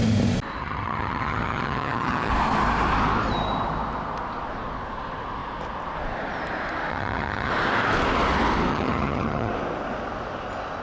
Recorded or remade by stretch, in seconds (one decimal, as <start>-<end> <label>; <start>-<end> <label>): 0.0-0.6 recorded; 0.6-2.3 remade; 2.3-6.9 recorded; 6.9-7.5 remade; 7.5-8.7 recorded; 8.7-9.5 remade; 9.5-10.8 recorded